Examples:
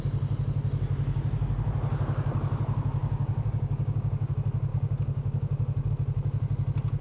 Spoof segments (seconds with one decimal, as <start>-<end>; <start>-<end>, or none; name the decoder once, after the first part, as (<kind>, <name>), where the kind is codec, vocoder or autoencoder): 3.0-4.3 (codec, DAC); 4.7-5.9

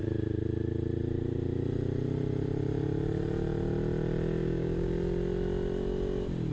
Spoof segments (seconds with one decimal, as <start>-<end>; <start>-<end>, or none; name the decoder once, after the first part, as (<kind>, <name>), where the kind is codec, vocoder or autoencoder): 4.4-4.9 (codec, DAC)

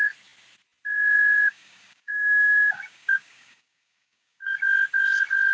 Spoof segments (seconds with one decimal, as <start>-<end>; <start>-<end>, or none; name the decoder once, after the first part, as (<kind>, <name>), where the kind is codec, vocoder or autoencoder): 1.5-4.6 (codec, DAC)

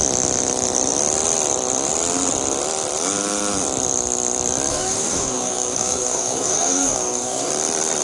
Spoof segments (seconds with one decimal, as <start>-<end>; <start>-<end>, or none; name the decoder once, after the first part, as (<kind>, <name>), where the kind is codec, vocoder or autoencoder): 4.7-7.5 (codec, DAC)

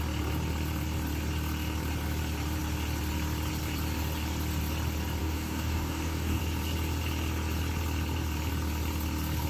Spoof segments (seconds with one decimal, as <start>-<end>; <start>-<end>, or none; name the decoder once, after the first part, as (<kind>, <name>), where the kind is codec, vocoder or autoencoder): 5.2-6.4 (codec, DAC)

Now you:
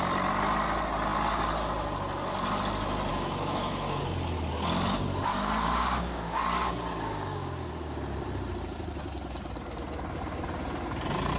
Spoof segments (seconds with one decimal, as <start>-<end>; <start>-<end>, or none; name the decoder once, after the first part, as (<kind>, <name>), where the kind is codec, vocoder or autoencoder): 3.1-4.0 (codec, DAC); 5.3-7.7

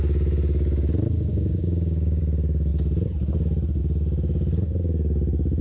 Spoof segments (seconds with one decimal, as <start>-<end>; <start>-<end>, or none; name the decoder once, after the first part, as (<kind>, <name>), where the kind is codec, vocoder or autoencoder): 1.3-2.2 (codec, DAC)

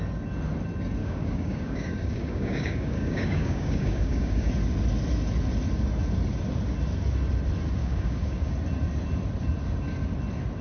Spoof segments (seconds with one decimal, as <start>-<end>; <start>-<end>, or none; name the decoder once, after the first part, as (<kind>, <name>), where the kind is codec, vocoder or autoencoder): 1.0-4.5 (codec, DAC); 7.8-8.5